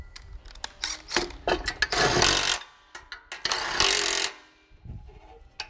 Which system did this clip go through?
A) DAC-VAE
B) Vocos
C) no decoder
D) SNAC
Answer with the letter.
C